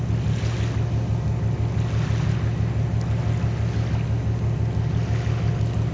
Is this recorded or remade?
recorded